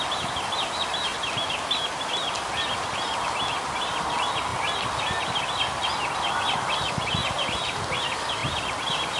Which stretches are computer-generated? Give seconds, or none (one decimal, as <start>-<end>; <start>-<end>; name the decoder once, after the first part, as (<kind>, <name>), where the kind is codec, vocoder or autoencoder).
7.2-7.8 (vocoder, BigVGAN v2)